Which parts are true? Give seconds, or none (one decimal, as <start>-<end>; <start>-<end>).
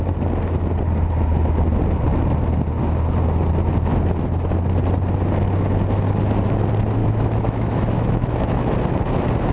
0.0-7.0; 8.7-9.5